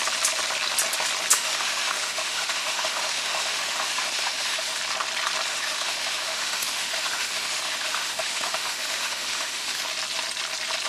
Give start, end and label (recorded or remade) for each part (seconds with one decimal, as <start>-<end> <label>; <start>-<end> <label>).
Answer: 0.0-1.3 recorded; 1.3-4.8 remade; 4.8-5.5 recorded; 5.5-9.8 remade; 9.8-10.9 recorded